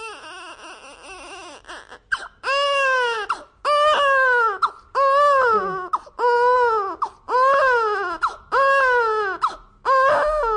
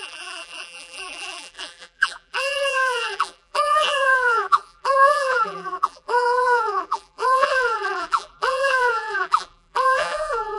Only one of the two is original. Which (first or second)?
first